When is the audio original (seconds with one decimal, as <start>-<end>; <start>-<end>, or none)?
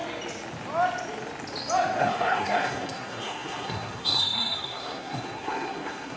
0.0-2.0